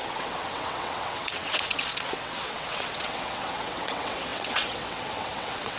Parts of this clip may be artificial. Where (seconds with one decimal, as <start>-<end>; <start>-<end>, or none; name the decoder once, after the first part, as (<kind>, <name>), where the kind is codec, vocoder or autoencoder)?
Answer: 0.0-5.8 (vocoder, WaveNeXt)